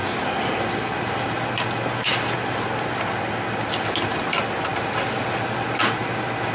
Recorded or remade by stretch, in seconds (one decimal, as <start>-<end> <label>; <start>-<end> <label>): 0.0-6.5 recorded